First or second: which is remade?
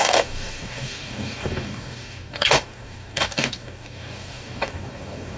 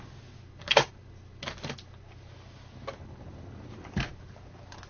first